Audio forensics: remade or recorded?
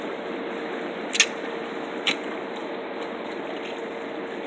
recorded